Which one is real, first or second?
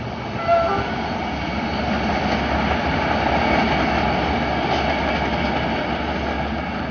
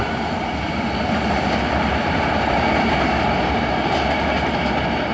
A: first